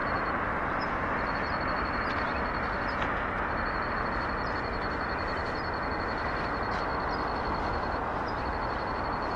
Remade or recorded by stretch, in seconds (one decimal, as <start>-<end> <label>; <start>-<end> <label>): 0.0-6.9 remade; 6.9-7.7 recorded; 7.7-9.4 remade